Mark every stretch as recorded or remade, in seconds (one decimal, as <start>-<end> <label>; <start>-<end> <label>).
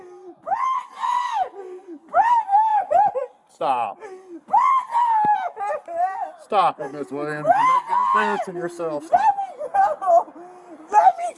0.0-11.4 recorded